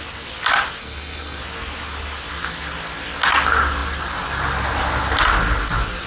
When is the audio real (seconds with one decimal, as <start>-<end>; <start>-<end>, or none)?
0.0-0.8; 1.4-6.1